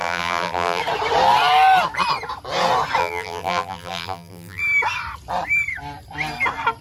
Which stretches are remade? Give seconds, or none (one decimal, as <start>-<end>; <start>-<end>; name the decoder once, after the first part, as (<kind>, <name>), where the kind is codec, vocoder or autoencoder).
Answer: 0.0-0.8 (vocoder, BigVGAN v2); 3.0-4.6